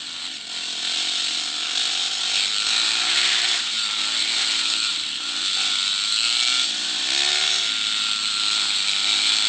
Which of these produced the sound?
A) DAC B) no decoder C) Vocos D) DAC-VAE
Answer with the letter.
B